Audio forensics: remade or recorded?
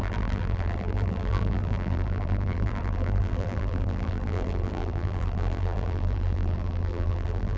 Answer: remade